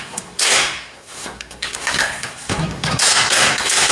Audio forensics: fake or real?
fake